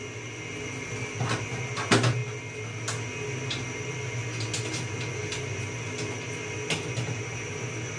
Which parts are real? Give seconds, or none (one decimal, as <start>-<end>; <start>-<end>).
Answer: 0.0-8.0